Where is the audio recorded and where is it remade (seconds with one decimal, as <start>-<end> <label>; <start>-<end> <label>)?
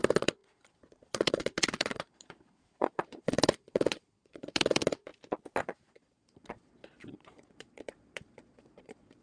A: 0.0-5.1 remade; 5.1-5.6 recorded; 5.6-9.2 remade